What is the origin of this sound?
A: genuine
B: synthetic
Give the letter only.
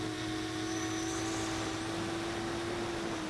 A